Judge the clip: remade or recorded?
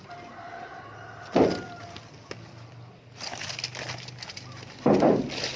recorded